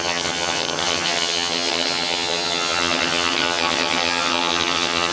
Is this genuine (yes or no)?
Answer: no